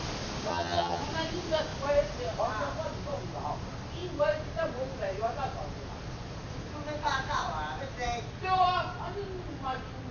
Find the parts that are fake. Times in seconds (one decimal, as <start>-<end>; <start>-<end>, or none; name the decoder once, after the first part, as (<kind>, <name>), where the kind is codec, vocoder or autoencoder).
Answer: 0.5-1.0 (vocoder, HiFi-GAN)